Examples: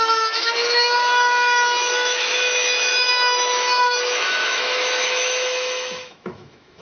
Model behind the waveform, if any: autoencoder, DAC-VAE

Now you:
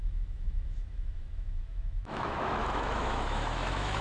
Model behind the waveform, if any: autoencoder, DAC-VAE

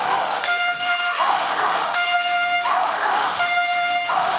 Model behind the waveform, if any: autoencoder, DAC-VAE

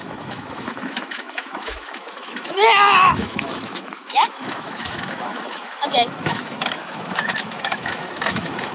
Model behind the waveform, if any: autoencoder, DAC-VAE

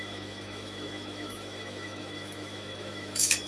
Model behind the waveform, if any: autoencoder, DAC-VAE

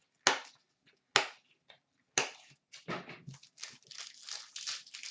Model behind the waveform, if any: none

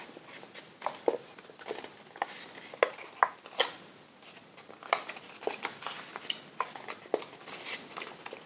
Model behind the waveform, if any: none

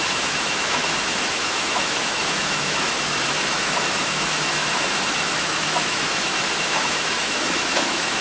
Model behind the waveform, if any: autoencoder, DAC-VAE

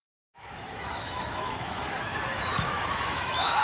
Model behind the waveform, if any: autoencoder, DAC-VAE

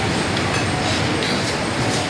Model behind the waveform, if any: none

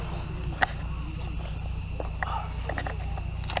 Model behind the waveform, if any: none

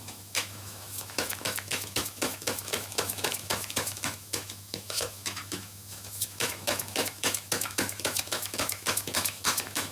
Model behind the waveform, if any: autoencoder, DAC-VAE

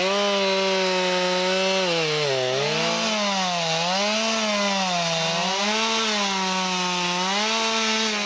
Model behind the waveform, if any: none